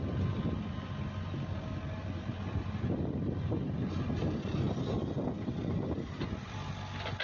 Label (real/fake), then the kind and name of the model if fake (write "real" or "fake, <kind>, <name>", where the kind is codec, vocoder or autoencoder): real